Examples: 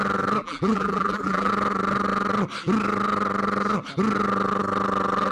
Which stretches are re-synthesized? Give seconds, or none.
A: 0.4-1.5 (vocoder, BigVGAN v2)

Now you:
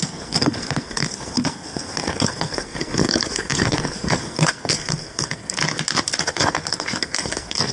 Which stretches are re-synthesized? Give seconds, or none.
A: 0.0-5.6 (codec, SNAC); 6.2-7.7

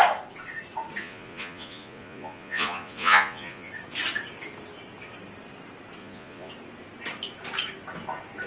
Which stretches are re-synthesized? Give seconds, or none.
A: 1.0-3.7 (vocoder, Vocos); 6.0-6.5

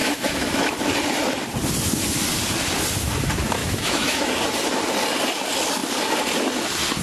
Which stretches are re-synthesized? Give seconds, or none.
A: 0.0-0.7 (autoencoder, DAC-VAE); 3.6-4.3

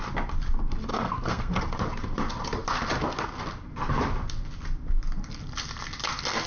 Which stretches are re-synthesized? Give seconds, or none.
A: 0.9-1.6 (codec, SNAC)

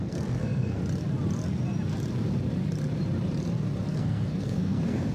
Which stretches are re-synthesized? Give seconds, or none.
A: 0.0-0.8 (codec, SNAC); 3.9-5.1